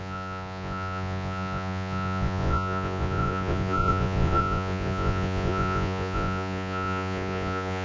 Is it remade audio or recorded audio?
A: remade